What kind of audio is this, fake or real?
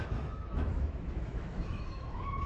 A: fake